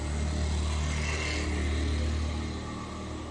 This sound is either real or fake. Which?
real